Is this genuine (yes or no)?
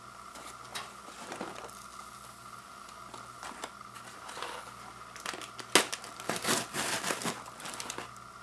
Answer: yes